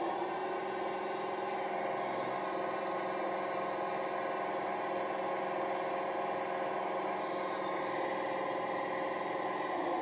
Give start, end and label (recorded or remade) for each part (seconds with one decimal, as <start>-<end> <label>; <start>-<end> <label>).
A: 0.0-10.0 recorded